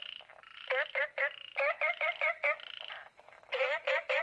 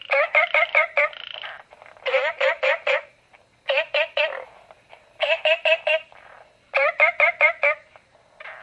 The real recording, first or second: first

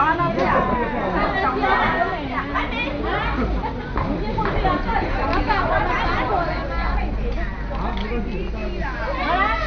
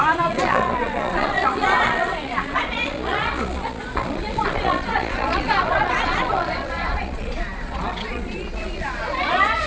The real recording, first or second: first